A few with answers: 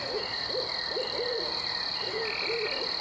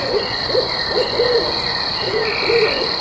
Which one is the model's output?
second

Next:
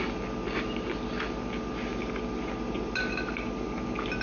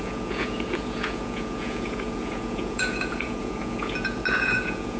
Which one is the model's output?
second